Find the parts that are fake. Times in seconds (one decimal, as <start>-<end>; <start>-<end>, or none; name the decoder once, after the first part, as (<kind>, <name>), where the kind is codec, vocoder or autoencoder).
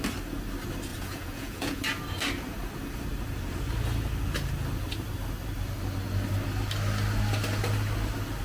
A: 0.9-1.8 (vocoder, Vocos)